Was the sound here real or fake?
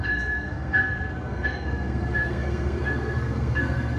fake